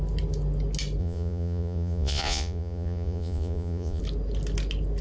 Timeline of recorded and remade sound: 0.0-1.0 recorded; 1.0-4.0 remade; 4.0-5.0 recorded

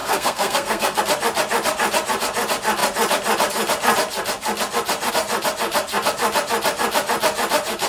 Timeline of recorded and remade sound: 0.0-1.0 remade; 1.0-7.9 recorded

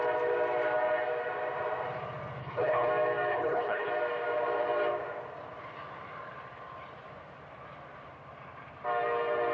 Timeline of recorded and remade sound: 0.0-2.4 recorded; 2.4-2.9 remade; 2.9-3.3 recorded; 3.3-3.9 remade; 3.9-9.5 recorded

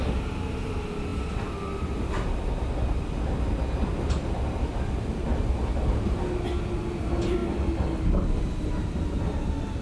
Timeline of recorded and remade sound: 0.0-9.8 recorded

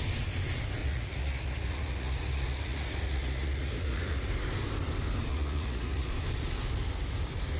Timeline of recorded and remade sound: 0.0-0.8 recorded; 0.8-4.3 remade; 4.3-5.3 recorded; 5.3-6.1 remade; 6.1-7.6 recorded

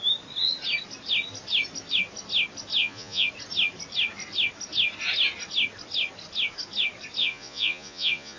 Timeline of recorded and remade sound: 0.0-2.8 recorded; 2.8-3.3 remade; 3.3-7.2 recorded; 7.2-8.4 remade